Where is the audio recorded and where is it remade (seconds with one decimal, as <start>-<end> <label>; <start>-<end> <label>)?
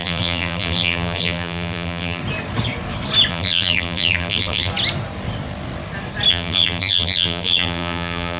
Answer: 0.0-2.2 remade; 2.2-3.3 recorded; 3.3-4.7 remade; 4.7-6.3 recorded; 6.3-8.4 remade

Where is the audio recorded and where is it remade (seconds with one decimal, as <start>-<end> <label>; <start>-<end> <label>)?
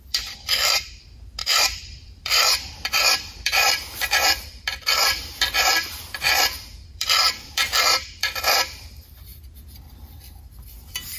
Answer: 0.0-9.3 remade; 9.3-11.2 recorded